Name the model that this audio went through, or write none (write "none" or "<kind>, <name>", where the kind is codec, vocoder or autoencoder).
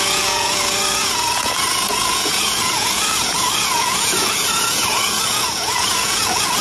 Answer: vocoder, Vocos